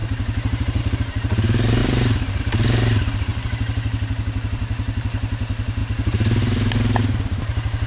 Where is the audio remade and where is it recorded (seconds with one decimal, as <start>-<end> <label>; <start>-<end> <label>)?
0.0-7.9 remade